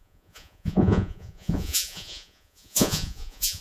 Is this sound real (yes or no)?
no